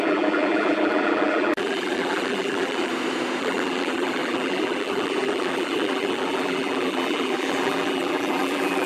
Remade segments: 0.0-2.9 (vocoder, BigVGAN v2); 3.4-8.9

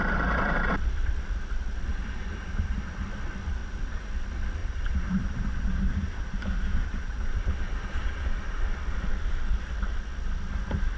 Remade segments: 1.9-3.0 (vocoder, BigVGAN v2); 3.6-4.1; 4.6-8.6